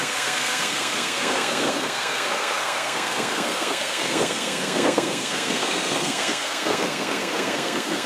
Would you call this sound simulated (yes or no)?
yes